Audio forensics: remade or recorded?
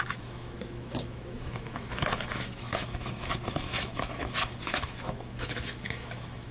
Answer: remade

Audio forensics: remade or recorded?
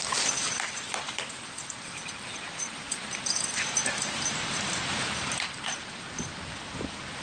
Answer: remade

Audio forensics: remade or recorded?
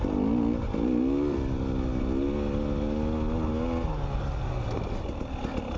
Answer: recorded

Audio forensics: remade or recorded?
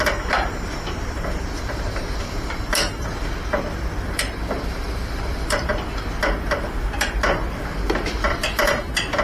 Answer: remade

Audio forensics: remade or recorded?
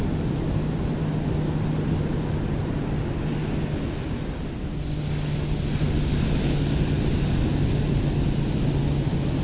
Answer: recorded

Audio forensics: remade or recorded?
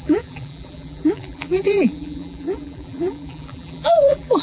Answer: remade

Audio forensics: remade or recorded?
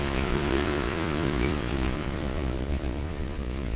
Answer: remade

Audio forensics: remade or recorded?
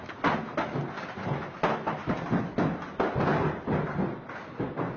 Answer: recorded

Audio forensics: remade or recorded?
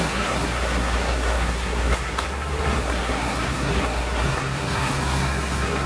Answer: remade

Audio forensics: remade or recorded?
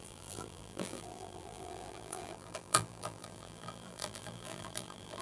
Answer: remade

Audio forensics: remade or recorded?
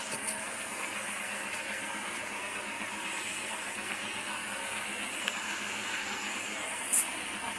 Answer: remade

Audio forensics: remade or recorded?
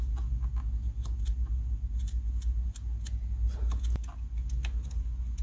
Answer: recorded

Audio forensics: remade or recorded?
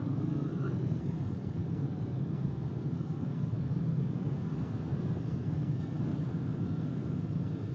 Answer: remade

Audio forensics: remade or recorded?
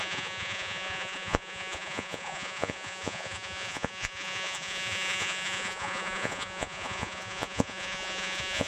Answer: remade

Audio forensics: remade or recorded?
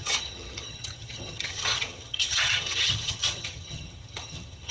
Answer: remade